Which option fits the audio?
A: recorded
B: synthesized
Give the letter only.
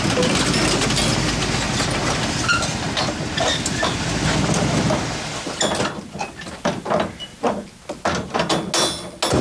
A